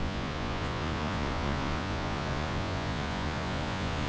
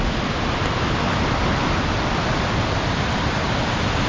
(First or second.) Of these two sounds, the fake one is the first